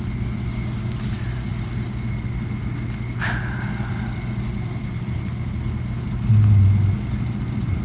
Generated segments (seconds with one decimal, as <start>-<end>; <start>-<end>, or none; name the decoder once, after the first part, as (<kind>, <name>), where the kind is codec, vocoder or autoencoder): none